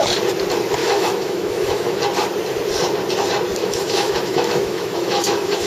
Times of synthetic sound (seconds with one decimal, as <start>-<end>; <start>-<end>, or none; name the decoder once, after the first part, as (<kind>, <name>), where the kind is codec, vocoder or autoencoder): 0.8-2.0 (autoencoder, DAC-VAE); 3.6-5.7